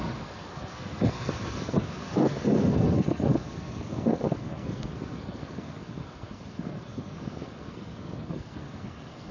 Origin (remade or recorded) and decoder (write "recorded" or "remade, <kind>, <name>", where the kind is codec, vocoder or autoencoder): remade, codec, SNAC